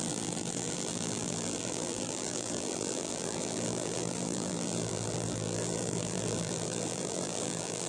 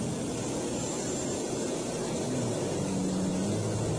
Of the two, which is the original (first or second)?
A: second